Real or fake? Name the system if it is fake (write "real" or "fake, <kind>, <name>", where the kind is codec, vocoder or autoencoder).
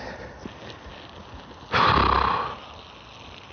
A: real